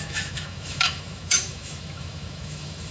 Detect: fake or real fake